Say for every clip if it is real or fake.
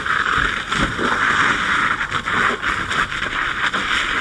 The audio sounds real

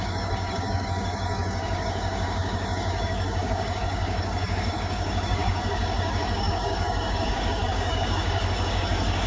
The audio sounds fake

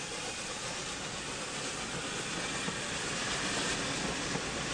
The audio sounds real